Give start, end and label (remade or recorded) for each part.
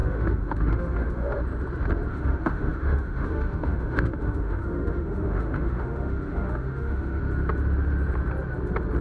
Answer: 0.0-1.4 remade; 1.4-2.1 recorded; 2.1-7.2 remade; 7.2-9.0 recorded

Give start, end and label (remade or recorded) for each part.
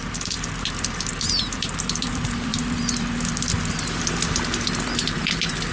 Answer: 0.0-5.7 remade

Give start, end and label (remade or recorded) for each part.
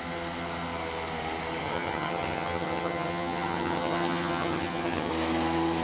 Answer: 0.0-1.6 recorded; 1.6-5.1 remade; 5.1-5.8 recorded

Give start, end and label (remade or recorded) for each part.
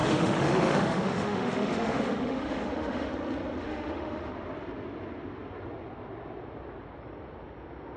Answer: 0.0-3.1 remade; 3.1-3.6 recorded; 3.6-4.3 remade; 4.3-8.0 recorded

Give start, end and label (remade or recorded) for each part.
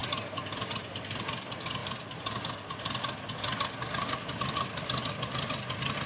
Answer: 0.0-6.1 recorded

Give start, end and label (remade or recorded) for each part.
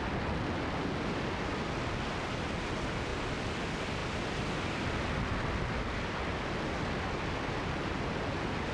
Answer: 0.0-8.7 recorded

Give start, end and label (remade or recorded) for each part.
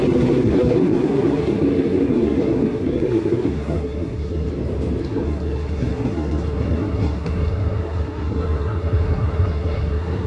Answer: 0.0-4.5 remade; 4.5-5.0 recorded; 5.0-10.3 remade